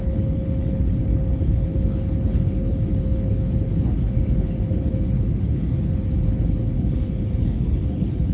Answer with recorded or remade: remade